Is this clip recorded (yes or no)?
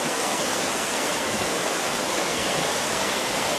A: no